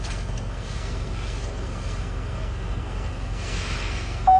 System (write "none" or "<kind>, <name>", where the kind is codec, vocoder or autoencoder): codec, SNAC